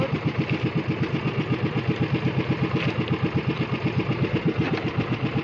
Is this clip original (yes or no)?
yes